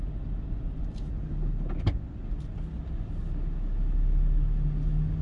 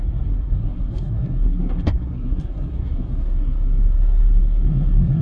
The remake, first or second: second